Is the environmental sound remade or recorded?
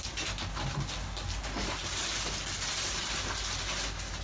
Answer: recorded